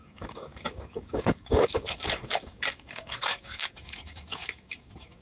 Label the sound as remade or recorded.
remade